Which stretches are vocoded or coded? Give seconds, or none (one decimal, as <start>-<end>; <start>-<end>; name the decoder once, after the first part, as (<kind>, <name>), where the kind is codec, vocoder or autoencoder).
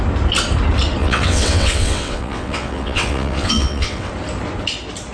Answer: 1.0-4.1 (vocoder, WaveNeXt)